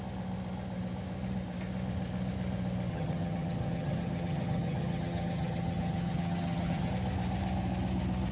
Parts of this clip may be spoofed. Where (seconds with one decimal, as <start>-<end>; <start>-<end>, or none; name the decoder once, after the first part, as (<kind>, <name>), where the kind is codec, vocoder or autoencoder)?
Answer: 2.9-6.9 (vocoder, HiFi-GAN)